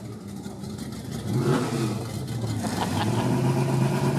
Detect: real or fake real